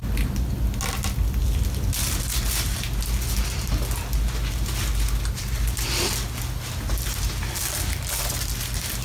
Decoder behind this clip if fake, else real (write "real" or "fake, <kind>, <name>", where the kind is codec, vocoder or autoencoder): real